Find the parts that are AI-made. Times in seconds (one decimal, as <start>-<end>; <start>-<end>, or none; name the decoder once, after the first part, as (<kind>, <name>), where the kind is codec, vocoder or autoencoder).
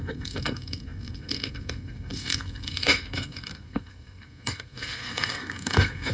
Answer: 0.0-6.1 (codec, SNAC)